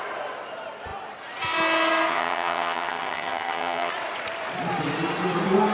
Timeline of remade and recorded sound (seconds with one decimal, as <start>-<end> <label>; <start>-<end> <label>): 0.0-2.1 recorded; 2.1-3.9 remade; 3.9-5.7 recorded